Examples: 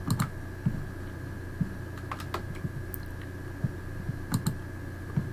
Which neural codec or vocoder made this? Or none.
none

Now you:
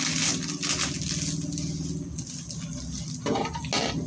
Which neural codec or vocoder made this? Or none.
none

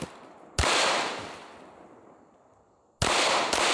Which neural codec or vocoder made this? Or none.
none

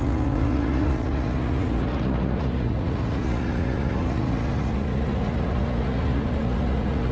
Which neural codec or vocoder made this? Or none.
vocoder, Vocos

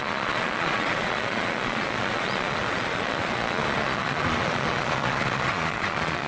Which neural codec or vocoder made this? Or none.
vocoder, Vocos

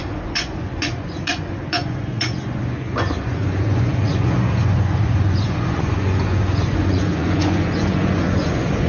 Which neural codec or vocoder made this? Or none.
vocoder, Vocos